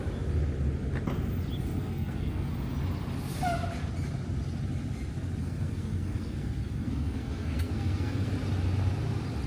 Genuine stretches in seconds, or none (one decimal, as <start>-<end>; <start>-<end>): 0.0-1.8; 2.5-5.4; 8.3-9.5